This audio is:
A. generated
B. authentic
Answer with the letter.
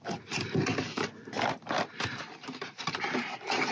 B